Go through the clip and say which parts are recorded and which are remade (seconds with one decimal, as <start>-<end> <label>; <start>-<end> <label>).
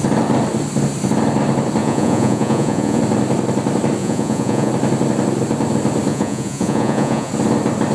0.0-1.8 recorded; 1.8-3.0 remade; 3.0-4.0 recorded; 4.0-4.7 remade; 4.7-6.1 recorded; 6.1-7.3 remade; 7.3-7.9 recorded